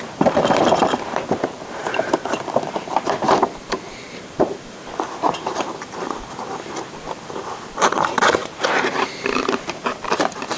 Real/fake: fake